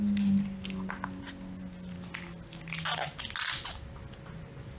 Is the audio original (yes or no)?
yes